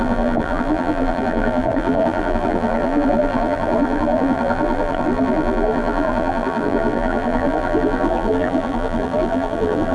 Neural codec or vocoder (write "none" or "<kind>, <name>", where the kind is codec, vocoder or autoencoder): vocoder, BigVGAN v2